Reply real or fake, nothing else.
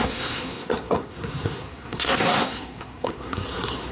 fake